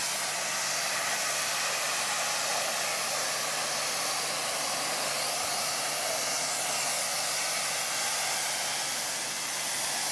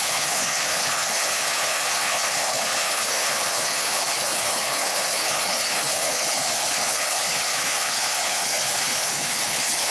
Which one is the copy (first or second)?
second